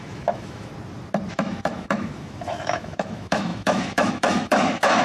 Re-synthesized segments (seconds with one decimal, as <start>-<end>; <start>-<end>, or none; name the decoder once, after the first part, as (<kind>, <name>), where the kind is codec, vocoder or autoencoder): 0.0-0.7 (autoencoder, DAC-VAE); 1.3-5.0